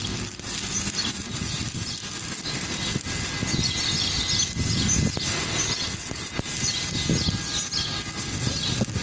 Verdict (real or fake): real